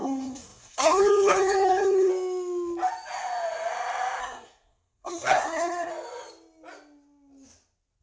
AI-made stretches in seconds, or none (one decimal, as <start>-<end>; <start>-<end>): 0.0-2.1; 4.2-5.9

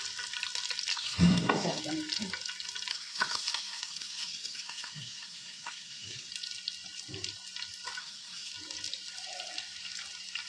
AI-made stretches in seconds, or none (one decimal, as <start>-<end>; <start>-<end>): 0.9-1.8; 2.9-6.3; 8.0-8.5